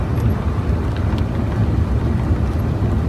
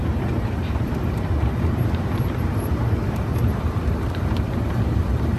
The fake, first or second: second